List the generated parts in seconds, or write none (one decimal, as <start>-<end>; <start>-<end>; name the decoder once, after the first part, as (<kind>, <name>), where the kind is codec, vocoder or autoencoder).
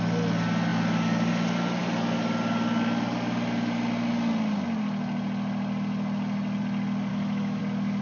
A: 7.1-7.6 (autoencoder, DAC-VAE)